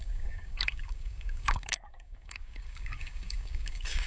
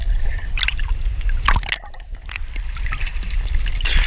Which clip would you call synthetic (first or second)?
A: first